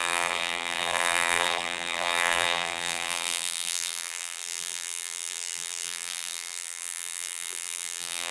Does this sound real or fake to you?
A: fake